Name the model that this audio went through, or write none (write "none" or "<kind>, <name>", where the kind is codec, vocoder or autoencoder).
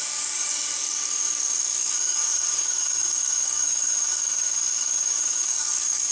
codec, DAC